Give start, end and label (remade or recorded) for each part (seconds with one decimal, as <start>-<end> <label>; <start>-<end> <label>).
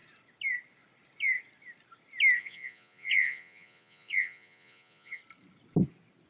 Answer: 0.0-2.4 recorded; 2.4-5.2 remade; 5.2-6.3 recorded